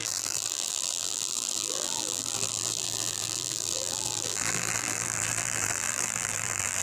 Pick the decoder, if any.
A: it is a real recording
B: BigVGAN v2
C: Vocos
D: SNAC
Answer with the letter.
B